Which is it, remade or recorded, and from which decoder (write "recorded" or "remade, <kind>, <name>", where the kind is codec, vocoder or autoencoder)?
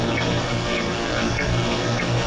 remade, codec, SNAC